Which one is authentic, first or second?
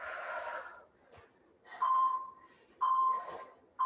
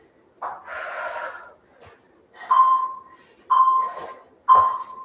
second